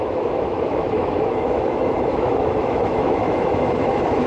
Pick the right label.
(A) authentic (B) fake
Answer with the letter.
B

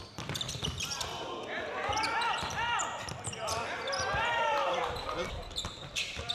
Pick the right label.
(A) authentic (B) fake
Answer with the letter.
B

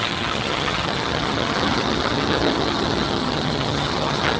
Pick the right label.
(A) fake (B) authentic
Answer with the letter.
A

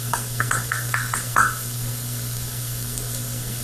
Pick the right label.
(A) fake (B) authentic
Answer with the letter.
A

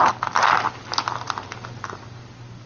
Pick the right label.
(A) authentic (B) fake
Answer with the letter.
A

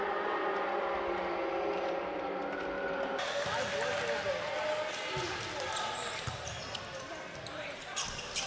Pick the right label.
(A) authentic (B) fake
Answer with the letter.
A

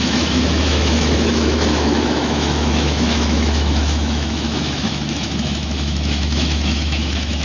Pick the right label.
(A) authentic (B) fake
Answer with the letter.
B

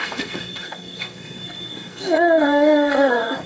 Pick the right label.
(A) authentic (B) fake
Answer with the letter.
B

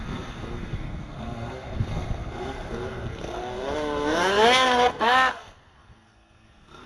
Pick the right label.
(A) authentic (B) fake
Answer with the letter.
B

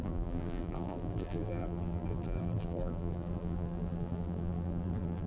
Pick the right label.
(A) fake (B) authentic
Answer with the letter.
A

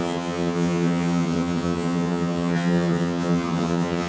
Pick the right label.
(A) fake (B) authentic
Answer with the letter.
A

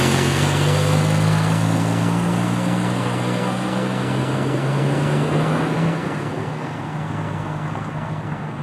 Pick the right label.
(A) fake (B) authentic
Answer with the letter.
A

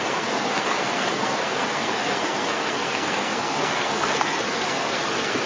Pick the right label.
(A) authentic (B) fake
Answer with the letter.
B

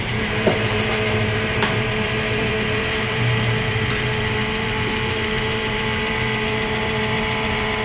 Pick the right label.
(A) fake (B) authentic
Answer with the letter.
A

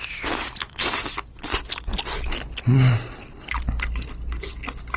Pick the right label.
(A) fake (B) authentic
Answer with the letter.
B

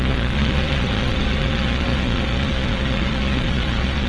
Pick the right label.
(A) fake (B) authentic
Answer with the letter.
A